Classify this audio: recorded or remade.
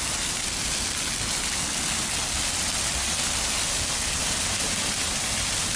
recorded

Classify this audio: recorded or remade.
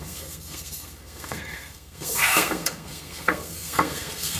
remade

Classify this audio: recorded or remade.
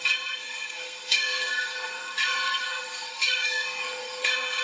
remade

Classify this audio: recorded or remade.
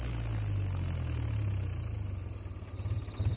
recorded